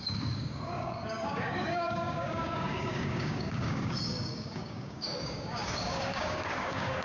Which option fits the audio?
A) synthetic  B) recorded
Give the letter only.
A